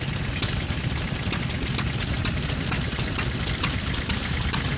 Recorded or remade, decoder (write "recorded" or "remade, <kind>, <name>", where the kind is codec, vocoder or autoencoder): recorded